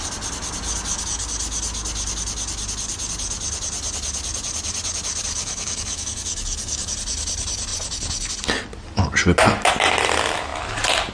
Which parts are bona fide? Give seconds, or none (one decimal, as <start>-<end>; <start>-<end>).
0.0-5.4; 6.9-11.1